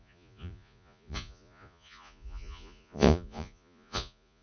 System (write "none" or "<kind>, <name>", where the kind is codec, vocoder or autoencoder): vocoder, Vocos